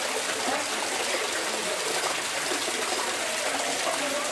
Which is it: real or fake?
real